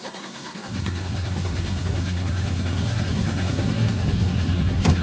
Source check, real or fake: fake